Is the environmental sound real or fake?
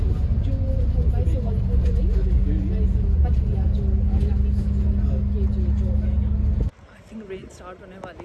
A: real